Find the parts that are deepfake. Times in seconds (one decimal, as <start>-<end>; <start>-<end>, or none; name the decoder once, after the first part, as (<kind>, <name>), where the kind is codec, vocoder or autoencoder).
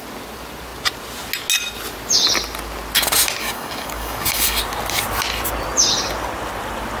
3.4-4.6 (codec, DAC)